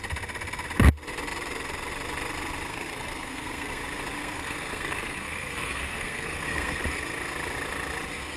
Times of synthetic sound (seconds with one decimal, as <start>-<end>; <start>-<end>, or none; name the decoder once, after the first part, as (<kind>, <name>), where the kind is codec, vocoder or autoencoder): 2.7-3.8 (codec, SNAC); 4.2-6.8